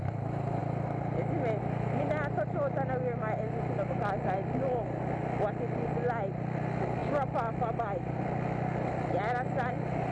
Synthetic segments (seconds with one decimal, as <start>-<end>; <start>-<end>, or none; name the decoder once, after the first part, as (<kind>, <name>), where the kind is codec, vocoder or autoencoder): none